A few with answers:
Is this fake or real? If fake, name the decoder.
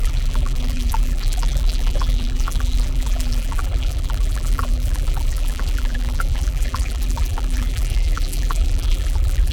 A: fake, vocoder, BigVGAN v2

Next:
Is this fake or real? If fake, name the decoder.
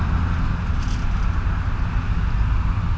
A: real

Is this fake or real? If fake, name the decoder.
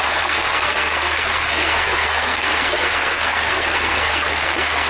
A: fake, codec, SNAC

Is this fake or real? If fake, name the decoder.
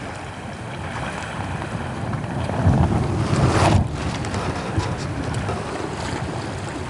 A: real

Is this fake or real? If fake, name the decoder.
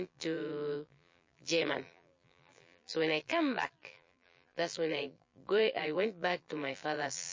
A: fake, vocoder, BigVGAN v2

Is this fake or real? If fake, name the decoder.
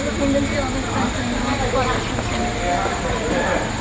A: real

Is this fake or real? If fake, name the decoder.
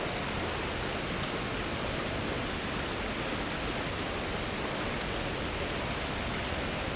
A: real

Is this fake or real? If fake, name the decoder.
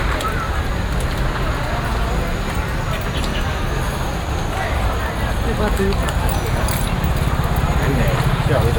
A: real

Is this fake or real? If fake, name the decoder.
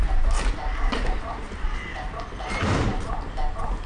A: real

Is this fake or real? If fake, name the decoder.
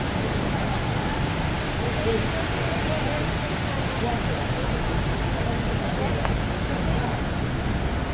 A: real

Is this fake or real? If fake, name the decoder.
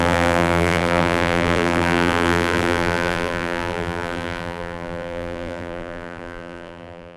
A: fake, vocoder, BigVGAN v2